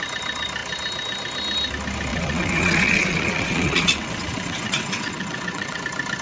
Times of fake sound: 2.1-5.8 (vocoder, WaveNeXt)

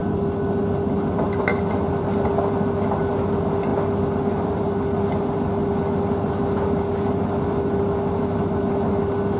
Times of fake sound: none

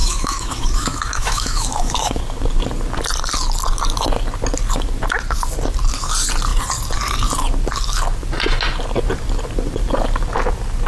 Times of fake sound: 0.0-2.2 (autoencoder, DAC-VAE)

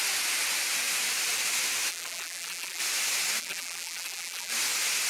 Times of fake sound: 1.9-2.8 (vocoder, BigVGAN v2); 3.4-4.5

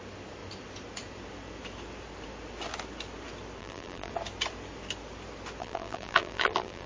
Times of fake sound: 3.6-4.1 (vocoder, BigVGAN v2); 5.6-6.9

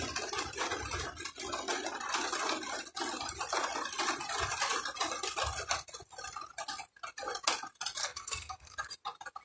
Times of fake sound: 8.0-8.9 (codec, SNAC)